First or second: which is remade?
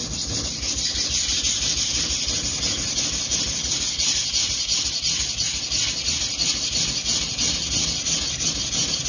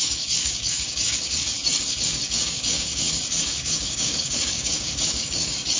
second